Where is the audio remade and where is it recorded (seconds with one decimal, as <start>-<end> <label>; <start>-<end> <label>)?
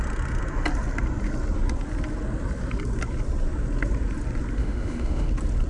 0.0-4.6 recorded; 4.6-5.3 remade; 5.3-5.7 recorded